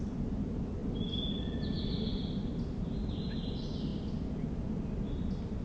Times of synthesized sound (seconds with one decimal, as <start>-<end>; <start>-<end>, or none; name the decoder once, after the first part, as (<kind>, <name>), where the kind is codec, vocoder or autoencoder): none